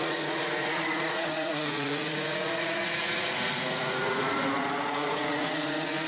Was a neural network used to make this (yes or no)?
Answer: yes